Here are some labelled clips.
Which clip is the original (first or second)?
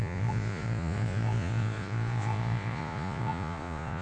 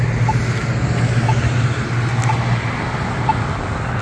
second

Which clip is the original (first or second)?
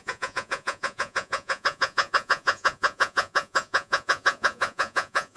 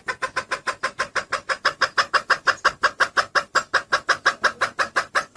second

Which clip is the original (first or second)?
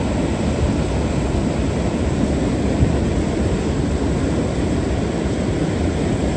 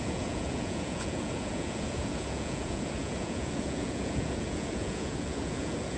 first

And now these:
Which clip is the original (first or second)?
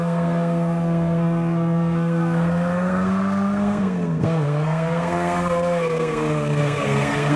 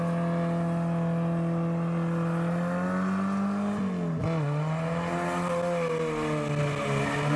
second